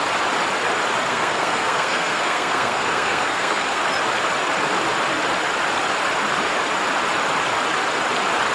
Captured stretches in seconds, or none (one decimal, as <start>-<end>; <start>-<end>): 0.0-1.1; 3.8-8.5